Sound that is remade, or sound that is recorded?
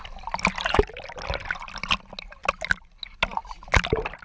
recorded